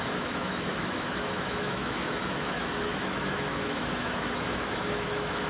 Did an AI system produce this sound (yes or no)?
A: yes